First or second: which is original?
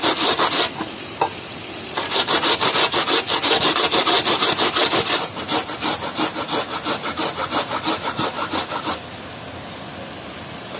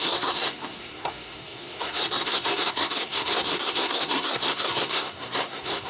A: first